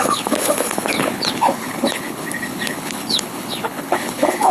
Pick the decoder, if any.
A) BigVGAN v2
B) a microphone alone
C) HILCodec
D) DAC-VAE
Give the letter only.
C